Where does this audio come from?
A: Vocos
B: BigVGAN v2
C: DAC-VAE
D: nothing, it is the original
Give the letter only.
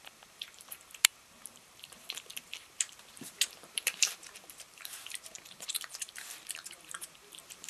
B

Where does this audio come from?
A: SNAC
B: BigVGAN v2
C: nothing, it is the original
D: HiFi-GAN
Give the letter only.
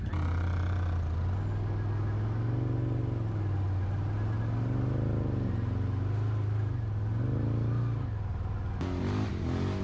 C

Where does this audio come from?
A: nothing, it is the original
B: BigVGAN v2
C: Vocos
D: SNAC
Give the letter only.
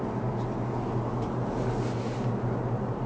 A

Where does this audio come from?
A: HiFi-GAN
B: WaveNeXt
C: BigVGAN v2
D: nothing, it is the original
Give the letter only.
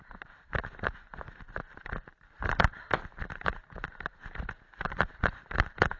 C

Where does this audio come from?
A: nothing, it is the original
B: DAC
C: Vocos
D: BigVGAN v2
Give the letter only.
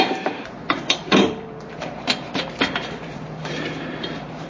D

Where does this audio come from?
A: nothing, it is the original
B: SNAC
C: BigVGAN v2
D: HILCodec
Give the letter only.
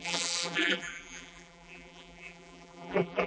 C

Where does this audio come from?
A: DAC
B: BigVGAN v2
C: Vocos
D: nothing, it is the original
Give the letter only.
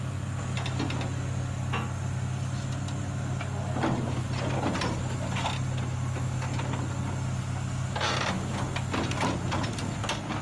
D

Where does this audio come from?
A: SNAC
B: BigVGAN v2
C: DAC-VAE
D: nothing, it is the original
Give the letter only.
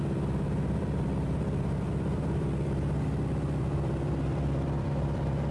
B